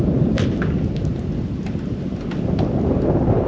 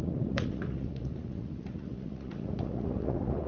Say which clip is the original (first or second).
first